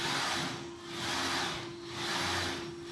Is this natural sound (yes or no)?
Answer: yes